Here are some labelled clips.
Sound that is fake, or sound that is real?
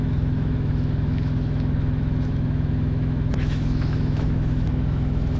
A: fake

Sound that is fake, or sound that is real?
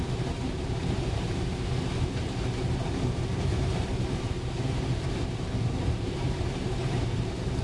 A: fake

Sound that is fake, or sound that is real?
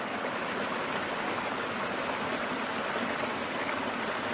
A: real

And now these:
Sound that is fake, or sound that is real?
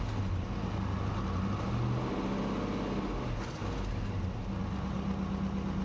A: real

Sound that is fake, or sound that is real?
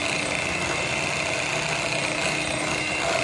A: real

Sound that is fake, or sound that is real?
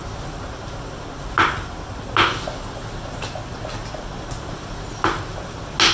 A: real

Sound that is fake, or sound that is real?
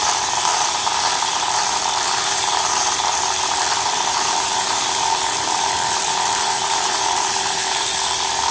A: fake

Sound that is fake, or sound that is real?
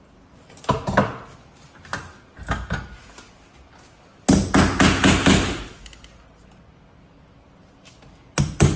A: real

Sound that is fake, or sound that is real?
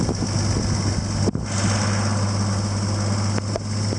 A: real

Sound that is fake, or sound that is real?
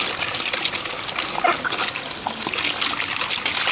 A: real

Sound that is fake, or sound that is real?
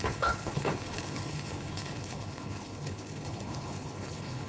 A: fake